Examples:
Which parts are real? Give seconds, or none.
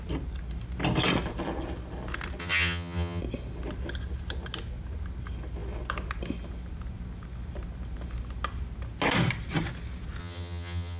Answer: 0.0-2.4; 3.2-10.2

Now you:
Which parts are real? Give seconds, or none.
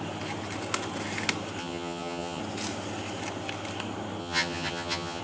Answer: 0.0-1.6; 2.4-4.2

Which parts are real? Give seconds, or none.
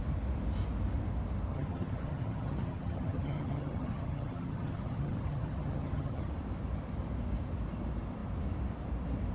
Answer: 0.0-1.5; 6.3-9.3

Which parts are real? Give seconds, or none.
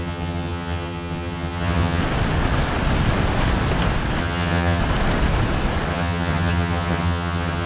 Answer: 2.0-4.2; 4.8-5.9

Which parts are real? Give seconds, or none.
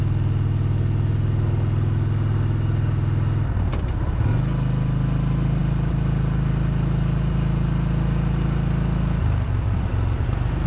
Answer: 0.0-10.7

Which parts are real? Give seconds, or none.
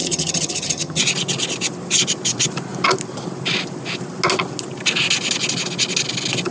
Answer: 1.0-6.5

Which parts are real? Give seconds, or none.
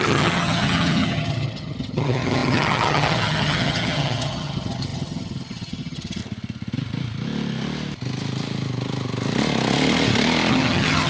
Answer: 6.2-10.5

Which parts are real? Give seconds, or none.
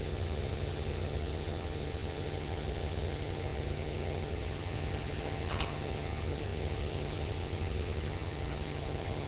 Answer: none